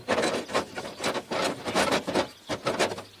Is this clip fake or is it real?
real